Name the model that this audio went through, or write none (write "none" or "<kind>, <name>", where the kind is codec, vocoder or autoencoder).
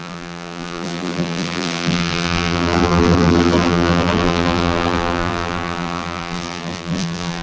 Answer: vocoder, BigVGAN v2